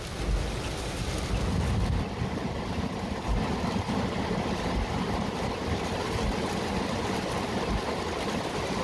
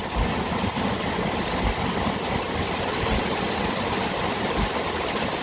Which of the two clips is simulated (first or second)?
second